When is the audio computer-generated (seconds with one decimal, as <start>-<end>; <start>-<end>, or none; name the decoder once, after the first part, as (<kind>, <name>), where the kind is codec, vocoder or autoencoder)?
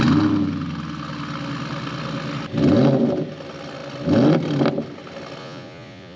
5.4-6.2 (vocoder, Vocos)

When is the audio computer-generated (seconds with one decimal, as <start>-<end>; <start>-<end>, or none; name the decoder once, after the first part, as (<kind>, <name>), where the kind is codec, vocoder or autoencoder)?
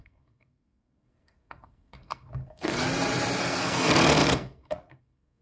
0.0-2.8 (codec, SNAC); 3.4-5.4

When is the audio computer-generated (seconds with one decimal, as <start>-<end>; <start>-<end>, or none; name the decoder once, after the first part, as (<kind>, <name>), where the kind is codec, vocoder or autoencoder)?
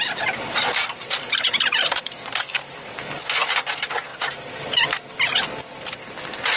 1.0-3.1 (vocoder, BigVGAN v2); 4.1-4.6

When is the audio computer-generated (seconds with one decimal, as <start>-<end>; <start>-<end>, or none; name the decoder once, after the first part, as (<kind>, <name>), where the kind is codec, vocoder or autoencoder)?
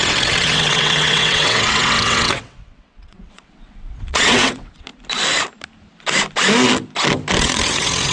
0.0-4.9 (vocoder, WaveNeXt); 7.4-8.1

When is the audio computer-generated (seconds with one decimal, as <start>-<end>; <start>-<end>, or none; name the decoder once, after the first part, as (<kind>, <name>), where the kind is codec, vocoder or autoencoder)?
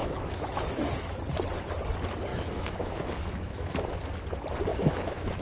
0.0-1.2 (autoencoder, DAC-VAE); 2.3-3.8; 4.7-5.4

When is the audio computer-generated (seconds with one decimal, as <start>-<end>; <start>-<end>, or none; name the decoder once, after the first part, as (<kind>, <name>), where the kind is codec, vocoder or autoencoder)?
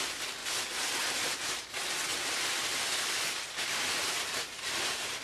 0.4-1.7 (vocoder, BigVGAN v2); 2.1-5.2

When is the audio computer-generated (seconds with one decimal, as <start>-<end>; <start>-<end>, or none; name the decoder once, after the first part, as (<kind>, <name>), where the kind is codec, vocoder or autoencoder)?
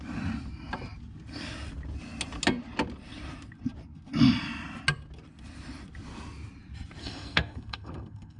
7.0-8.4 (codec, SNAC)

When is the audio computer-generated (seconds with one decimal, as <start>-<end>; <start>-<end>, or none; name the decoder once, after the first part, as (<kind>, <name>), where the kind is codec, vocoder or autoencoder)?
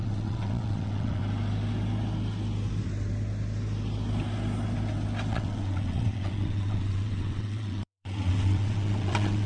0.0-1.2 (vocoder, WaveNeXt); 5.3-9.5